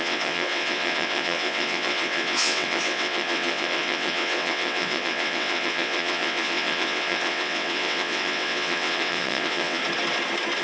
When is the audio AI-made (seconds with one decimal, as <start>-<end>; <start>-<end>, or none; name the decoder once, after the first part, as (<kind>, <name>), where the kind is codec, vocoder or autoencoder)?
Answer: 0.0-9.8 (vocoder, WaveNeXt)